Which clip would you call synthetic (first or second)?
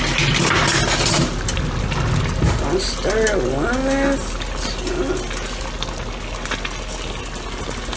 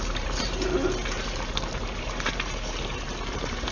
second